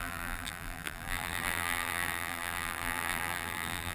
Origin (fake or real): fake